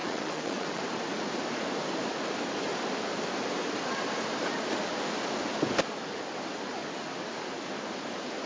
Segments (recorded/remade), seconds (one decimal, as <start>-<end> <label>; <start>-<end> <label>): 0.0-0.8 remade; 0.8-8.5 recorded